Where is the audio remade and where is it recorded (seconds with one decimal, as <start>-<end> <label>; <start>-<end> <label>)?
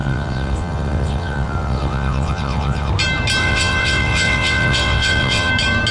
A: 0.0-2.9 remade; 2.9-3.4 recorded; 3.4-5.5 remade; 5.5-5.9 recorded